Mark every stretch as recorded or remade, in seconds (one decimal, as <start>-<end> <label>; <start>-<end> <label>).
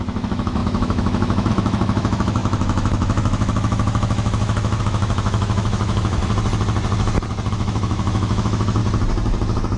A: 0.0-6.2 remade; 6.2-7.5 recorded; 7.5-8.8 remade; 8.8-9.8 recorded